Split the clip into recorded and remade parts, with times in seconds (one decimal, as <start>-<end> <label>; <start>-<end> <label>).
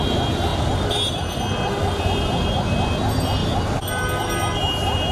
0.0-5.1 recorded